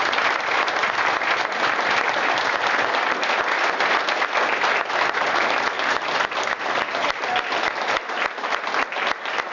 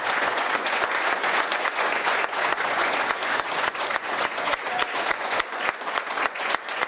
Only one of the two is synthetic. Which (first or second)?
second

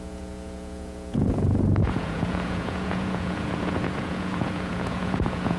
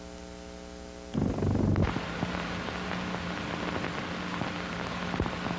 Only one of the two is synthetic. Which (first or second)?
first